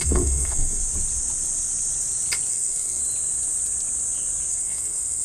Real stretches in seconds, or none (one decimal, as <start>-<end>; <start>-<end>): 0.8-2.5; 3.0-4.5